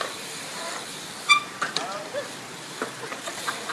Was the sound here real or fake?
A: fake